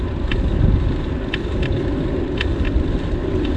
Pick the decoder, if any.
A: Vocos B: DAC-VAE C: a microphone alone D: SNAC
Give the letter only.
C